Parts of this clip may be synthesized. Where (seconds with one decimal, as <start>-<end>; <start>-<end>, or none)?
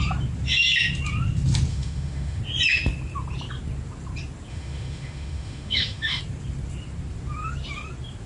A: 1.7-2.4; 4.5-6.2